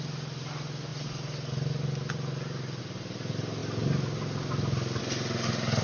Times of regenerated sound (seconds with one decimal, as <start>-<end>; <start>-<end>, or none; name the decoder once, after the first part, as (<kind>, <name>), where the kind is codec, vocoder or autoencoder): 0.0-3.6 (vocoder, BigVGAN v2); 5.0-5.8